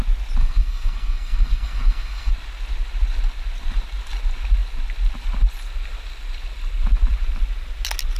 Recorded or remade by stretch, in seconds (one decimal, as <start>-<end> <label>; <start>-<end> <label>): 0.0-0.4 recorded; 0.4-2.3 remade; 2.3-8.2 recorded